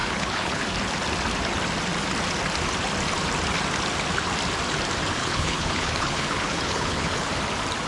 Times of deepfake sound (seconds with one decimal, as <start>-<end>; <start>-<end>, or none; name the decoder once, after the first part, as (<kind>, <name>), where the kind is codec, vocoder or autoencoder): 0.0-0.6 (codec, HILCodec); 5.2-7.3